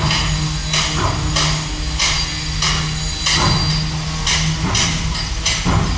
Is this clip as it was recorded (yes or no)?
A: yes